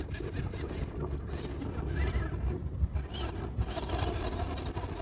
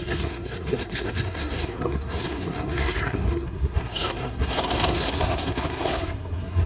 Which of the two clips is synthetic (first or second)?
second